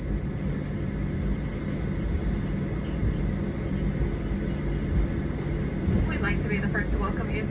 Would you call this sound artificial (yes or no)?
no